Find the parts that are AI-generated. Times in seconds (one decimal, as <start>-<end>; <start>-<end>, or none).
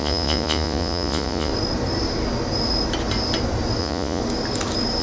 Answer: 0.0-1.5; 3.8-4.2